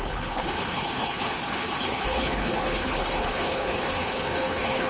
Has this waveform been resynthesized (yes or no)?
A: yes